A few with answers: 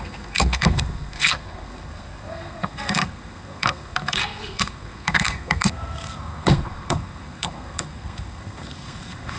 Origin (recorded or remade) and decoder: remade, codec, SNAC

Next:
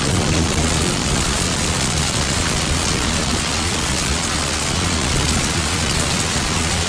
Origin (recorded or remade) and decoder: remade, vocoder, Vocos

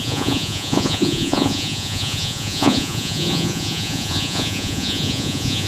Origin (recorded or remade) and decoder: remade, vocoder, Vocos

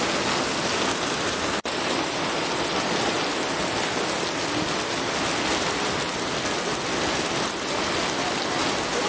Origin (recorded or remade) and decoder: recorded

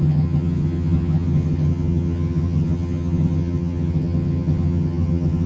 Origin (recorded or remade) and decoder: remade, vocoder, HiFi-GAN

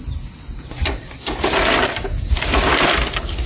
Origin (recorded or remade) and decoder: recorded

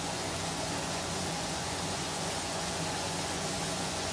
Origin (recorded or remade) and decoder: remade, vocoder, Vocos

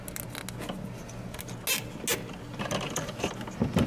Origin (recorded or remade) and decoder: recorded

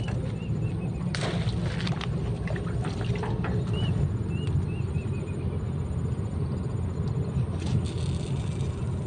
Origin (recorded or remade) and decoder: remade, vocoder, BigVGAN v2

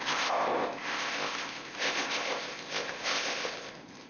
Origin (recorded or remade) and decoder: remade, codec, ZipCodec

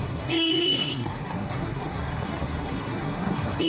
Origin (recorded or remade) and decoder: remade, codec, SNAC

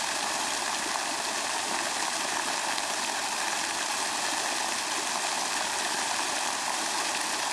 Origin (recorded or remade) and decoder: recorded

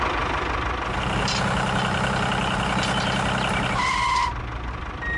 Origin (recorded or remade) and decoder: recorded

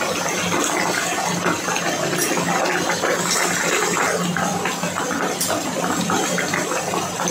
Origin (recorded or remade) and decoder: recorded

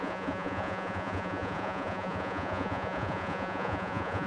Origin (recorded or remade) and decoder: remade, vocoder, Vocos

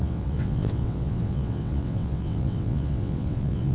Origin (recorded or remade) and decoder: remade, vocoder, WaveNeXt